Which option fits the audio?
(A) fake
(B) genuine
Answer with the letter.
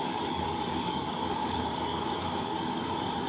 A